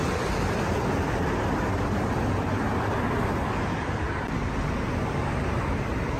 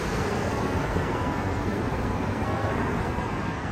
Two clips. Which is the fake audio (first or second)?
second